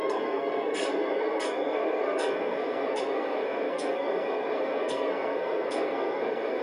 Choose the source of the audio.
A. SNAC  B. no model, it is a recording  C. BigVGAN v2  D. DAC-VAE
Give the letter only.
A